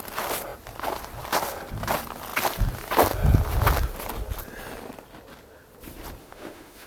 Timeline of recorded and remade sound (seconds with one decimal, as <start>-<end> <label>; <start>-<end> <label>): 0.0-6.2 recorded; 6.2-6.9 remade